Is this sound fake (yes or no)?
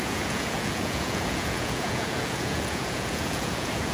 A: yes